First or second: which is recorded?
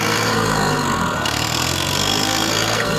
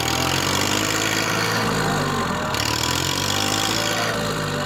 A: second